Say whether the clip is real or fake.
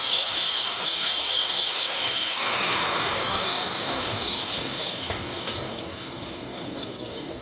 fake